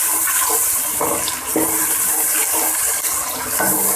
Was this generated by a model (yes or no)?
no